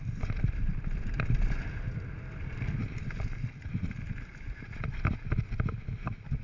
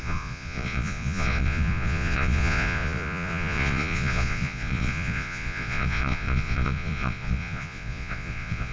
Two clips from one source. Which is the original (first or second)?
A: first